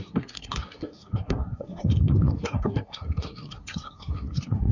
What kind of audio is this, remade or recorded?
remade